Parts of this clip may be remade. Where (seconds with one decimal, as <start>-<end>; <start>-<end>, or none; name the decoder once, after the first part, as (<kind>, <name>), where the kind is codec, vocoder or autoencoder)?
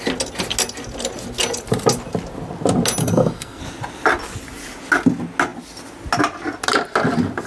3.0-3.6 (codec, SNAC)